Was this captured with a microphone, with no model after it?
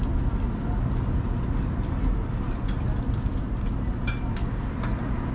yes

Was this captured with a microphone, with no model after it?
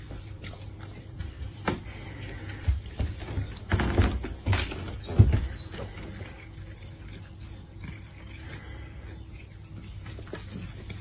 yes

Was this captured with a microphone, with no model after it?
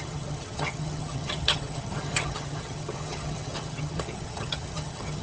no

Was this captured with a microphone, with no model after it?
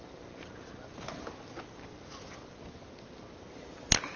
yes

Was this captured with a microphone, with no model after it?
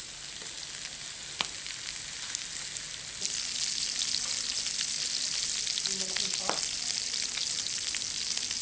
yes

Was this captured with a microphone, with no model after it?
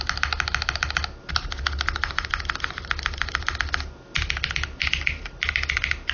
yes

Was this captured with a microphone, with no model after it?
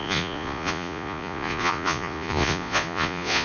no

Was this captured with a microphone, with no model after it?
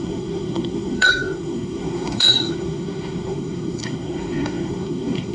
no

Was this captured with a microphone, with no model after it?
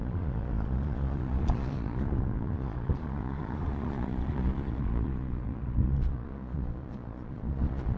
no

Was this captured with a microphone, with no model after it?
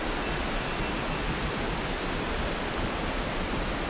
yes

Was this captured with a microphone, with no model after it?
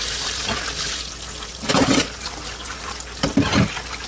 yes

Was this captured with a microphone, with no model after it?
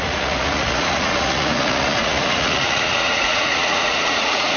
no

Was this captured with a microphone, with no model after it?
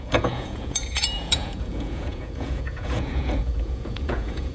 no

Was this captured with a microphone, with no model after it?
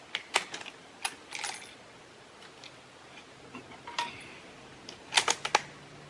yes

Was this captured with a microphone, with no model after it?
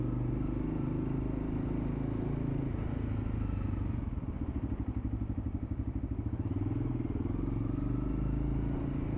yes